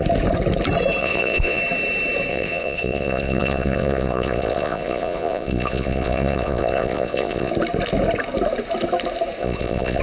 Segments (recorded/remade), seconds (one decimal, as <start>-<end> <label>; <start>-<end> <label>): 0.0-1.0 recorded; 1.0-1.6 remade; 1.6-2.3 recorded; 2.3-7.5 remade; 7.5-9.4 recorded; 9.4-10.0 remade